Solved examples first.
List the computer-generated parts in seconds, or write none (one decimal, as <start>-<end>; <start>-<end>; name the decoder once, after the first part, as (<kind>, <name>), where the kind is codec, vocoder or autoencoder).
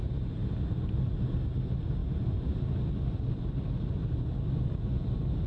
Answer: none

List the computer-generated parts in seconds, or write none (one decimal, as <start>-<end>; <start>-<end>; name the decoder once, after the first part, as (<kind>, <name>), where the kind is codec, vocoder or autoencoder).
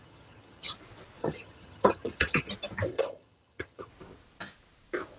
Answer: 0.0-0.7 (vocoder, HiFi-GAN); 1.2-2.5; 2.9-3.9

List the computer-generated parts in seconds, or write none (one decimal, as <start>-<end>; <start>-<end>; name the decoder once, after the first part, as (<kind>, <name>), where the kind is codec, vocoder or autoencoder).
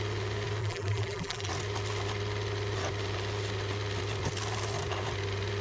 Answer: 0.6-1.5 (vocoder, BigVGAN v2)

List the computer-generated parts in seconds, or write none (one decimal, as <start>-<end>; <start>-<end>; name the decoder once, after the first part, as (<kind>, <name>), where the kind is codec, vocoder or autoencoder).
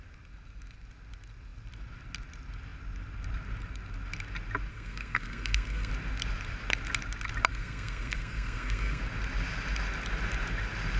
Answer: 4.7-5.9 (codec, SNAC); 7.5-9.0